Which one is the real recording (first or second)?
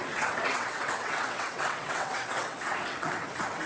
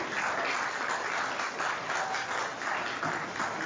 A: second